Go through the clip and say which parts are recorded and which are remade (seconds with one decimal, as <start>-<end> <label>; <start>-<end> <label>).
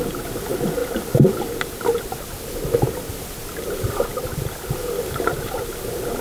0.0-6.2 recorded